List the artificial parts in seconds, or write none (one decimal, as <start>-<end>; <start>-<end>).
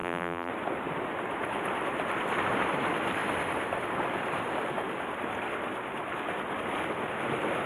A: 0.0-0.5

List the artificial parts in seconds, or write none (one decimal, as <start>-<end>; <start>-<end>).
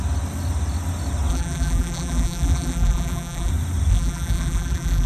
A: 1.3-3.5; 3.9-5.1